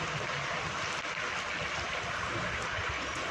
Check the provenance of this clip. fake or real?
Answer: real